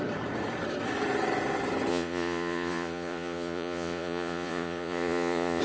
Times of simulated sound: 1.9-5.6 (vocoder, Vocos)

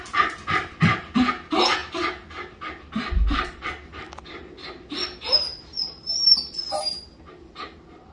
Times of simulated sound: none

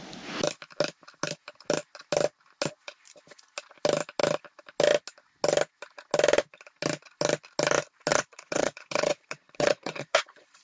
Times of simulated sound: 8.1-10.6 (vocoder, Vocos)

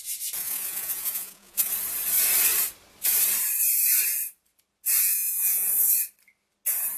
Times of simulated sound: 0.4-1.7 (vocoder, Vocos); 5.0-5.7